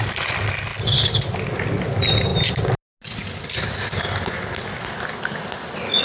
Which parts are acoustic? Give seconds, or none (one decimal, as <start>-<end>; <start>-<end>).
0.0-6.0